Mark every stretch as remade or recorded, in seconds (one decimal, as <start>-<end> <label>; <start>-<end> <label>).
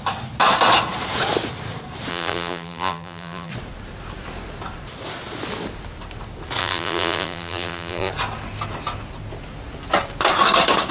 0.0-2.1 recorded; 2.1-3.5 remade; 3.5-6.6 recorded; 6.6-8.1 remade; 8.1-10.9 recorded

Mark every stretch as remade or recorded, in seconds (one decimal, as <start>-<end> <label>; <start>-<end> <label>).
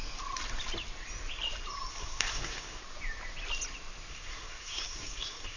0.0-1.9 recorded; 1.9-2.8 remade; 2.8-4.1 recorded; 4.1-5.6 remade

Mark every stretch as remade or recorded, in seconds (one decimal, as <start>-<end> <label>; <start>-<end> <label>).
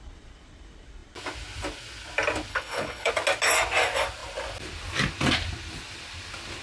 0.0-2.5 recorded; 2.5-3.1 remade; 3.1-6.6 recorded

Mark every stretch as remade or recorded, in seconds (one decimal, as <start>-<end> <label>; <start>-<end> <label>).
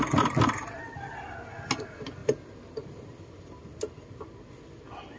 0.0-5.2 recorded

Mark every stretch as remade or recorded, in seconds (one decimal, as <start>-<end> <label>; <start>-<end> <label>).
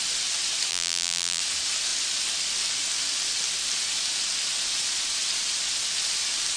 0.0-0.7 recorded; 0.7-1.4 remade; 1.4-6.6 recorded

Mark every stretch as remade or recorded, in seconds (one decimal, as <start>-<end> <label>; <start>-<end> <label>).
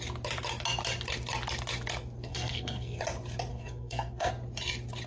0.0-2.3 recorded; 2.3-3.0 remade; 3.0-3.5 recorded; 3.5-4.3 remade; 4.3-5.1 recorded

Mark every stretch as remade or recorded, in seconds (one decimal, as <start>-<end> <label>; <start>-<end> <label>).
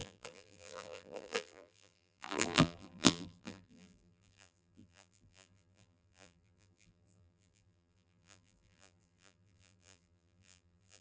0.0-11.0 remade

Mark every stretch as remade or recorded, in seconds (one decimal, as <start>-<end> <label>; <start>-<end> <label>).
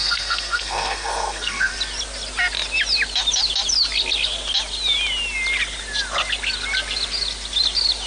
0.0-1.7 remade; 1.7-8.1 recorded